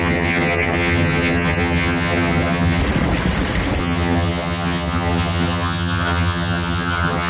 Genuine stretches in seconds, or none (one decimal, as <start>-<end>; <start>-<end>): 2.8-3.8